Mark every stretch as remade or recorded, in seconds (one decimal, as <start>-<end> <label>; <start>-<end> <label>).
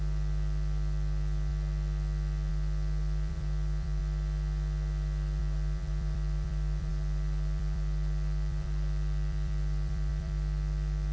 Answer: 0.0-1.5 remade; 1.5-2.5 recorded; 2.5-4.0 remade; 4.0-5.4 recorded; 5.4-11.1 remade